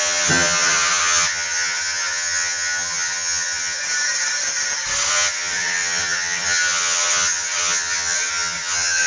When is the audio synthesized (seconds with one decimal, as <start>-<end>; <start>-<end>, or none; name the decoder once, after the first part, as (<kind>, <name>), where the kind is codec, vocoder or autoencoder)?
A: 0.0-3.8 (vocoder, HiFi-GAN); 5.1-9.1